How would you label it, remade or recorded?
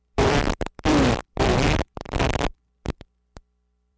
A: remade